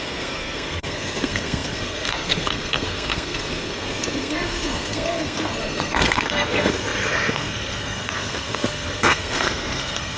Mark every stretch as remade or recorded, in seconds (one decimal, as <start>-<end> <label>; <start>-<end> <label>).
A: 0.0-10.2 remade